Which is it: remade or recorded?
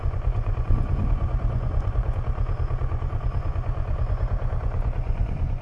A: remade